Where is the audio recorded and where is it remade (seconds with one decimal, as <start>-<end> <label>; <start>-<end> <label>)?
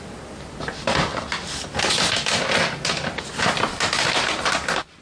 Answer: 0.0-5.0 recorded